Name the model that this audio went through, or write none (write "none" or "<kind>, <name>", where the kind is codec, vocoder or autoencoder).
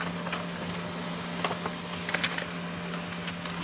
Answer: none